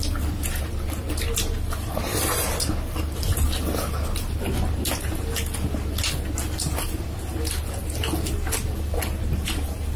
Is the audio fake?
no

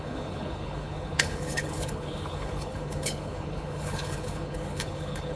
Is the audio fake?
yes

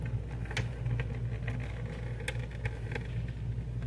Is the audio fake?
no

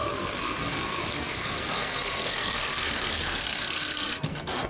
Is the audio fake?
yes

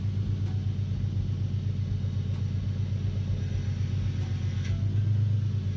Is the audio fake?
no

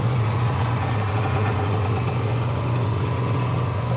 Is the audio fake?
yes